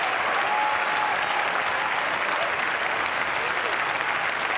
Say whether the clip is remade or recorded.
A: recorded